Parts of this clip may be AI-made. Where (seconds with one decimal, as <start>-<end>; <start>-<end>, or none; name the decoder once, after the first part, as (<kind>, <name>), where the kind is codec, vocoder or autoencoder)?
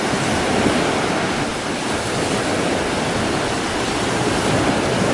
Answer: none